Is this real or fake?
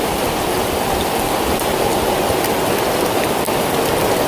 fake